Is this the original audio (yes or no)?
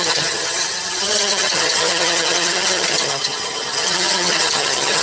no